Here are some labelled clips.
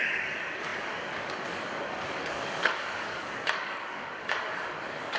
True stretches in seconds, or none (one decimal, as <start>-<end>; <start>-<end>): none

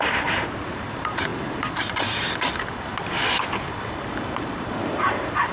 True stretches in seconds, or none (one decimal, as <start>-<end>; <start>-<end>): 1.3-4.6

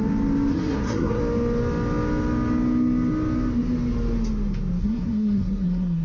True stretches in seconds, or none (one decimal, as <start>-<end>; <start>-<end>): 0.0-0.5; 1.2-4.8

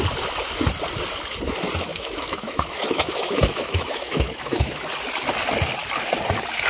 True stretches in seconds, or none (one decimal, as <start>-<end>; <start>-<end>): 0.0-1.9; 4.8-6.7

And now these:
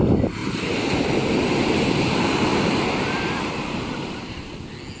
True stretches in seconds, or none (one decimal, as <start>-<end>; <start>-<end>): 0.0-0.4; 1.1-2.5; 4.6-5.0

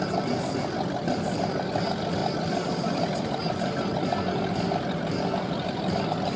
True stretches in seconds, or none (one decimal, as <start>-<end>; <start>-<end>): 0.0-6.4

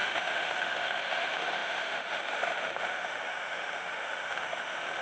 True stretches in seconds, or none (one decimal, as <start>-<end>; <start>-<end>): none